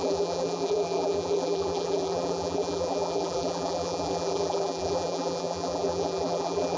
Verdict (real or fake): fake